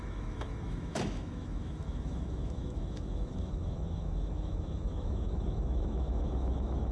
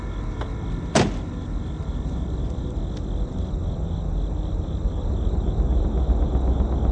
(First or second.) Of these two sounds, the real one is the second